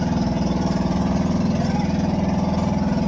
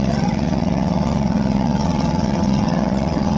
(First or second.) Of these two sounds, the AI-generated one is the second